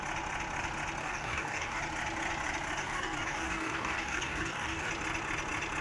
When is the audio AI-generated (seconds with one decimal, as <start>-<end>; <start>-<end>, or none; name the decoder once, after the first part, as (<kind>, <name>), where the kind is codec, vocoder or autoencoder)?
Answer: 1.0-1.8 (codec, DAC); 2.8-4.9